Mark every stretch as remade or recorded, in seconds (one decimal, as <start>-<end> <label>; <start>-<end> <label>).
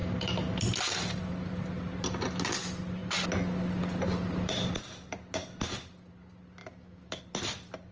0.0-6.6 recorded; 6.6-7.2 remade; 7.2-7.9 recorded